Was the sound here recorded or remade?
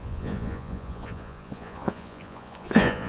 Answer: remade